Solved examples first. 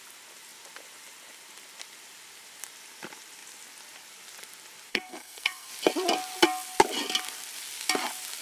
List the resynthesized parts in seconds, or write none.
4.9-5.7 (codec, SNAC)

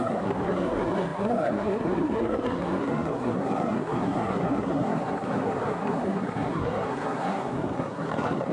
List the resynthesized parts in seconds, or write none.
0.0-8.5 (codec, SNAC)

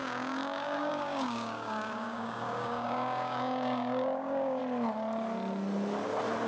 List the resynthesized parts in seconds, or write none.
0.0-4.6 (codec, DAC)